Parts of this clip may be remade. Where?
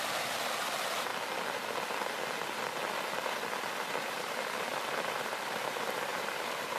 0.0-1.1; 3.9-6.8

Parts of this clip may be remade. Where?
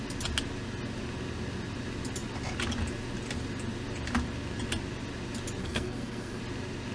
5.6-6.4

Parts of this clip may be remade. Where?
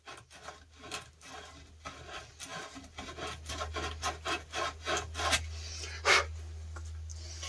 none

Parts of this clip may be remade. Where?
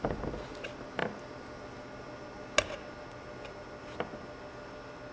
none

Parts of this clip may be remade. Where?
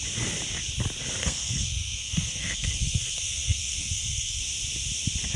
1.2-4.4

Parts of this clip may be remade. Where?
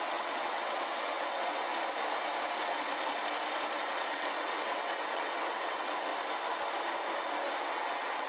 0.0-1.7; 2.6-3.2; 3.8-6.1; 7.6-8.3